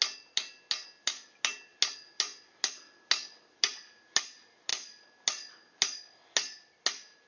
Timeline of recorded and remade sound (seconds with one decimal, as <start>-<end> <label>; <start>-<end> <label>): 0.0-7.3 recorded